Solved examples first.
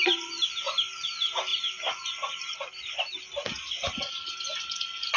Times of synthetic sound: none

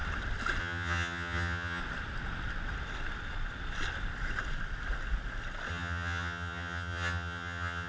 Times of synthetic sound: 0.6-1.8 (vocoder, HiFi-GAN); 5.7-7.9

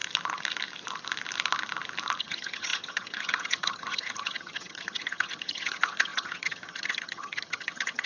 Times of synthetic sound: 2.2-8.1 (vocoder, HiFi-GAN)